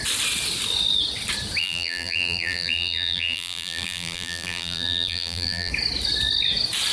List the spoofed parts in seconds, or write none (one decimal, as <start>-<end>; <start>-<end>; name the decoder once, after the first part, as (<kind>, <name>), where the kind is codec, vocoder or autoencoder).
1.6-5.7 (vocoder, BigVGAN v2)

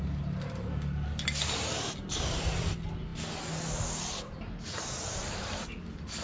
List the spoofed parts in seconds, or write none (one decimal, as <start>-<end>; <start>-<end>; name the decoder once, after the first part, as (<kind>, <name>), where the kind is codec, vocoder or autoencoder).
none

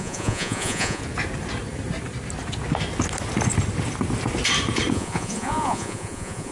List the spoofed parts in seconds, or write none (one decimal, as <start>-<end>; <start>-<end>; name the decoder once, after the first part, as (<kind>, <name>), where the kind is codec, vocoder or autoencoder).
0.0-1.0 (vocoder, Vocos); 4.9-6.5

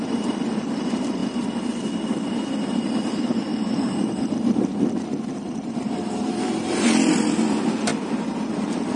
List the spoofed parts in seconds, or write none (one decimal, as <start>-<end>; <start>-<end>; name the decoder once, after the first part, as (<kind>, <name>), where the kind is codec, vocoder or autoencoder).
0.0-1.2 (vocoder, BigVGAN v2); 3.0-4.7; 5.5-7.9; 8.5-9.0

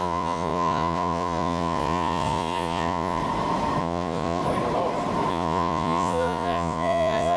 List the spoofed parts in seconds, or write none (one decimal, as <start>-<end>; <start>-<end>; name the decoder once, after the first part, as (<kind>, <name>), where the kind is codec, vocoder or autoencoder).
0.0-3.2 (vocoder, Vocos); 3.8-4.4; 5.3-7.4

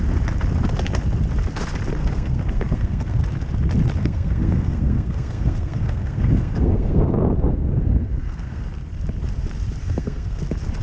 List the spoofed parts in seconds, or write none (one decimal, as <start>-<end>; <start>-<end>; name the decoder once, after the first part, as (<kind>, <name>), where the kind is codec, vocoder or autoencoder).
2.0-3.2 (codec, SNAC); 4.0-8.6; 9.8-10.4

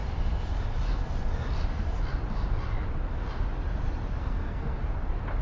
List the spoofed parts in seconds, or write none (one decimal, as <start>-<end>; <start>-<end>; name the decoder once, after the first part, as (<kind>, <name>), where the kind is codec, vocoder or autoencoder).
4.2-4.8 (codec, SNAC)